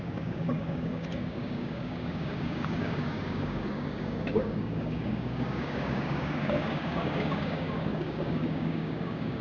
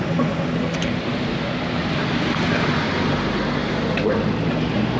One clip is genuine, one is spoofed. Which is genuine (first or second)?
second